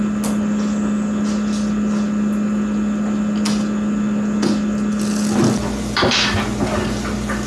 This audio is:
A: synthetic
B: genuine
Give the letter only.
B